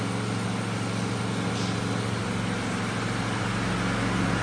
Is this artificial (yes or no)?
no